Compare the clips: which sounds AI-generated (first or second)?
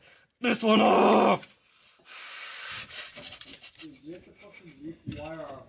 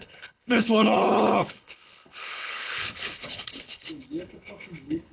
second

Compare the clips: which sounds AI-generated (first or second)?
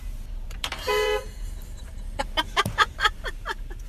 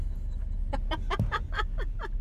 first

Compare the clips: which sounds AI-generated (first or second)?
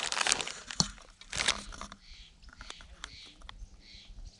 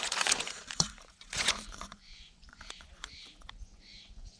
second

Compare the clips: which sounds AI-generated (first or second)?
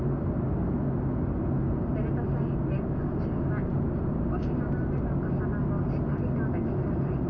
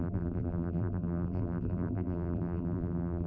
second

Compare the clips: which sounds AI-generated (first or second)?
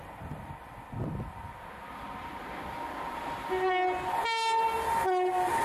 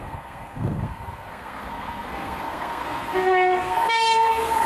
second